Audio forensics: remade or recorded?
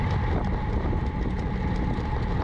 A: recorded